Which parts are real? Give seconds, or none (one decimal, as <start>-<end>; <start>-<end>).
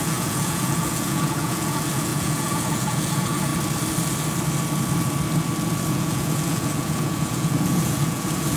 3.5-5.9